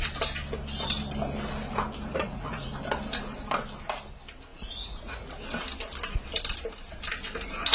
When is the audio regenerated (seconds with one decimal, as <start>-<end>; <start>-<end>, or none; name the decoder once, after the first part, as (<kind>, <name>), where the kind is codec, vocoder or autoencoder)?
2.1-2.7 (vocoder, Vocos); 4.5-5.3